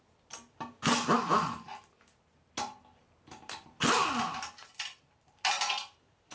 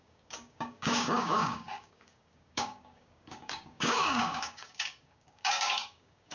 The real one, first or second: first